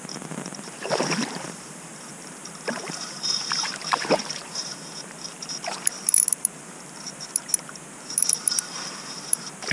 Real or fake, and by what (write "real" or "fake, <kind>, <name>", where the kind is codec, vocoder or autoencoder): fake, vocoder, BigVGAN v2